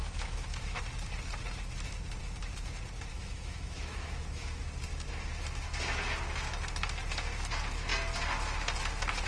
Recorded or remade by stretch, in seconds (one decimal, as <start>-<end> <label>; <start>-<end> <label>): 0.0-0.8 remade; 0.8-3.1 recorded; 3.1-4.6 remade; 4.6-9.3 recorded